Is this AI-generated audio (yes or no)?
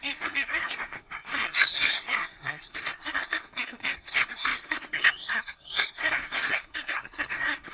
yes